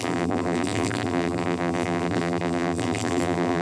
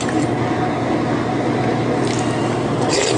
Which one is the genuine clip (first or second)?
second